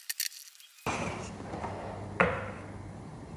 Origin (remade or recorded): recorded